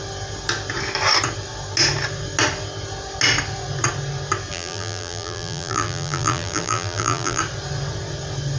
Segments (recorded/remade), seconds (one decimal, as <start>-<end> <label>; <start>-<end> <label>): 0.0-4.5 recorded; 4.5-7.4 remade; 7.4-8.6 recorded